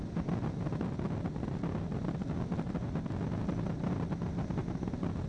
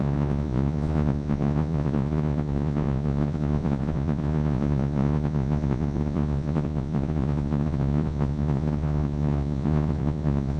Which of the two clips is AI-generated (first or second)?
second